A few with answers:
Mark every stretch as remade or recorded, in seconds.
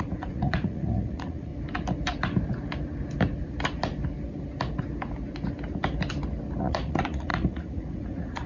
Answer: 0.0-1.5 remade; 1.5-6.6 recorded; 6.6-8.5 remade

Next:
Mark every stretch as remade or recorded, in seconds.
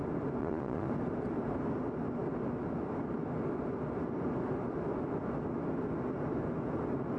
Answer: 0.0-0.4 recorded; 0.4-0.9 remade; 0.9-7.2 recorded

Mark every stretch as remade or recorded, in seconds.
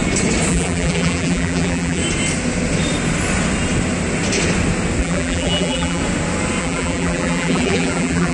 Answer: 0.0-0.5 recorded; 0.5-2.0 remade; 2.0-5.0 recorded; 5.0-6.0 remade; 6.0-6.6 recorded; 6.6-8.3 remade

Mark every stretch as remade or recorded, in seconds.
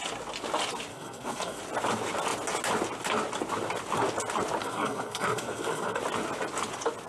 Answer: 0.0-0.9 recorded; 0.9-1.6 remade; 1.6-4.6 recorded; 4.6-6.0 remade; 6.0-7.1 recorded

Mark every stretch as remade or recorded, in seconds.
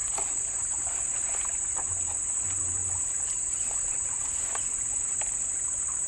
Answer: 0.0-6.1 recorded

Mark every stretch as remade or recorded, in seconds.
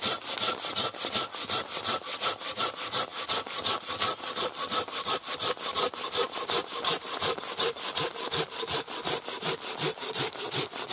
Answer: 0.0-10.9 recorded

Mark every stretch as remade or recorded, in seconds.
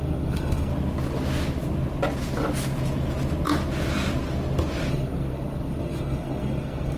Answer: 0.0-0.7 remade; 0.7-4.9 recorded; 4.9-7.0 remade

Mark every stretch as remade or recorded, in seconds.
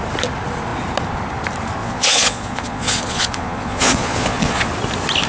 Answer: 0.0-1.8 recorded; 1.8-4.7 remade; 4.7-5.3 recorded